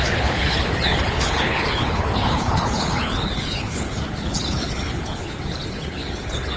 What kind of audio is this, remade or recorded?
remade